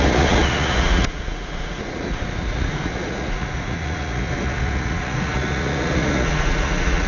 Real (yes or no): no